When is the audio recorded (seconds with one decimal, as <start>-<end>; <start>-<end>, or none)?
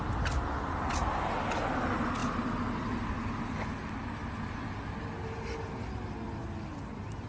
0.0-7.3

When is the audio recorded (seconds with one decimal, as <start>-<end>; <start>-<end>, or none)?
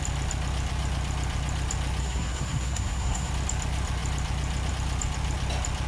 0.0-2.0; 3.3-5.9